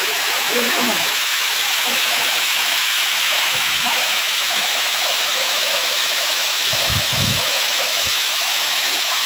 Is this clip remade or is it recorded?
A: remade